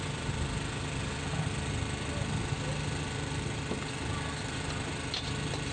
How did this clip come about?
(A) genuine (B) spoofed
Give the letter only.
A